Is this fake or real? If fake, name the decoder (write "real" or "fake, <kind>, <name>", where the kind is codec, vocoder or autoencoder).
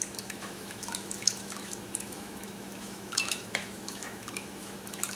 fake, autoencoder, DAC-VAE